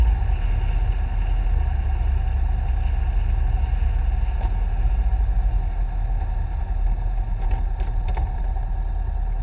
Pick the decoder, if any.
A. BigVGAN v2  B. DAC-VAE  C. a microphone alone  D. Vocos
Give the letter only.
C